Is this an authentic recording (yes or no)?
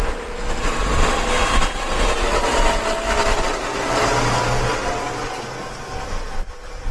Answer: yes